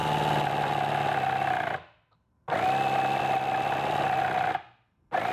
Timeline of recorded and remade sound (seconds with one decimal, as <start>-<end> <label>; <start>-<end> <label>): 0.0-5.3 recorded